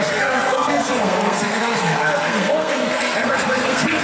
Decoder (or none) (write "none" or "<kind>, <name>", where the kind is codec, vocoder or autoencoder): codec, SNAC